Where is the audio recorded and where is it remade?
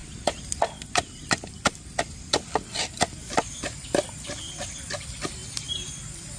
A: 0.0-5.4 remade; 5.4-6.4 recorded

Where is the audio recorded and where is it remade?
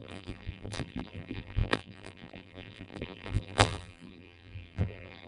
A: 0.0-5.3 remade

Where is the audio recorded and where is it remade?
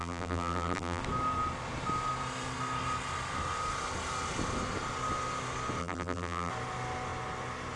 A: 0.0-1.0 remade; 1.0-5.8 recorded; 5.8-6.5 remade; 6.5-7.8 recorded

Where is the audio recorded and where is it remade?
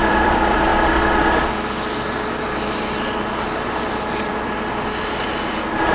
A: 0.0-0.7 remade; 0.7-4.2 recorded; 4.2-5.9 remade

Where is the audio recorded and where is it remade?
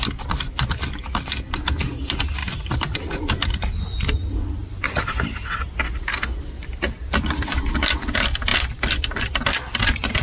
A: 0.0-2.4 recorded; 2.4-3.2 remade; 3.2-4.6 recorded; 4.6-5.4 remade; 5.4-10.2 recorded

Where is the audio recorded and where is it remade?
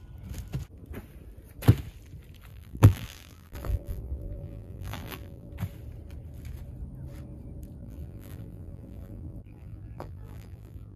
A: 0.0-2.5 recorded; 2.5-5.5 remade; 5.5-7.8 recorded; 7.8-11.0 remade